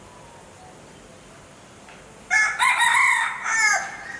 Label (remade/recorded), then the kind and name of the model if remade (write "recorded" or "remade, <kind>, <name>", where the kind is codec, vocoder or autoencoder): recorded